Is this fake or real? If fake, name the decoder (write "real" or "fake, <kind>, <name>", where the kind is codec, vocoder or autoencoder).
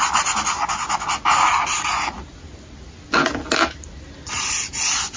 real